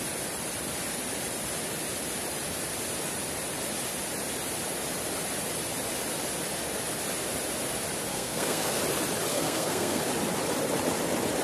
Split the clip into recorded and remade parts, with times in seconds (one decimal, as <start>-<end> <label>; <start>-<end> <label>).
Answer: 0.0-8.1 recorded; 8.1-8.8 remade; 8.8-9.3 recorded; 9.3-10.1 remade; 10.1-11.4 recorded